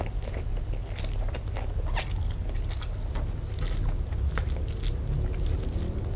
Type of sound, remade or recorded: recorded